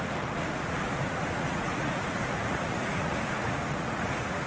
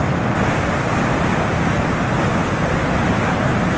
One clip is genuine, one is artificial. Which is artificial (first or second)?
first